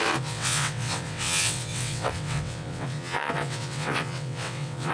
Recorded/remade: remade